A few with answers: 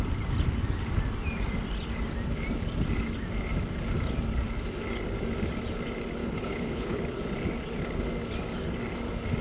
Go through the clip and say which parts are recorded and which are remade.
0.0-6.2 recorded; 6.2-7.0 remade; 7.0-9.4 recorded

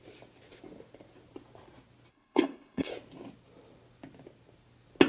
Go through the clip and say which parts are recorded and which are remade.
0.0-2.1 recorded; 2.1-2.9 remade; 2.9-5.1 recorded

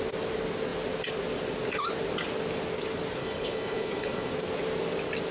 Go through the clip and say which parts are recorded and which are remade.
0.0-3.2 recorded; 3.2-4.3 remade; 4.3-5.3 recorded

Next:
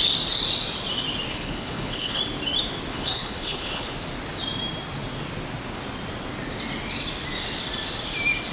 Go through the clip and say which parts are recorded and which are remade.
0.0-1.3 recorded; 1.3-2.2 remade; 2.2-2.9 recorded; 2.9-3.9 remade; 3.9-8.5 recorded

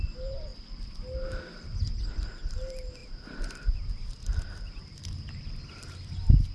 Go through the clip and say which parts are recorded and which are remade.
0.0-6.5 recorded

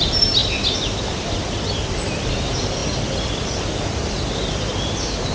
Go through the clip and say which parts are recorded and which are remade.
0.0-5.3 recorded

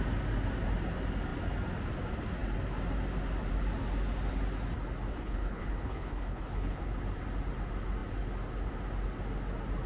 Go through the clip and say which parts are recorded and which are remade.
0.0-5.1 recorded; 5.1-6.8 remade; 6.8-9.9 recorded

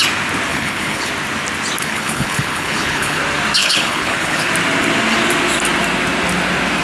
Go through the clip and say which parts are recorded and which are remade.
0.0-0.5 recorded; 0.5-1.1 remade; 1.1-1.8 recorded; 1.8-3.2 remade; 3.2-3.6 recorded; 3.6-4.5 remade; 4.5-6.8 recorded